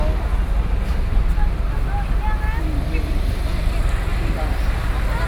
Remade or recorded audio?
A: recorded